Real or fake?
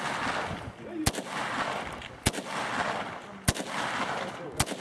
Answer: real